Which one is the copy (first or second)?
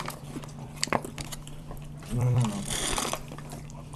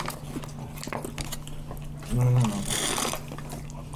first